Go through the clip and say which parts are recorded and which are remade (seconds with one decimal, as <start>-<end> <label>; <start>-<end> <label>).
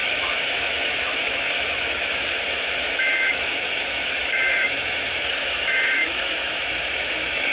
0.0-7.5 remade